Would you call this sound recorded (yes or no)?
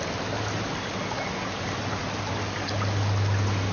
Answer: yes